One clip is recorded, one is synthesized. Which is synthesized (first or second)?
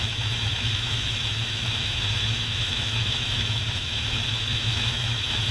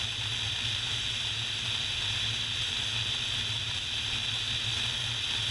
first